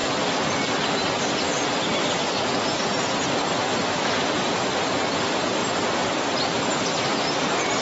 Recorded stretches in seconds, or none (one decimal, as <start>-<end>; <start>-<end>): 0.0-7.8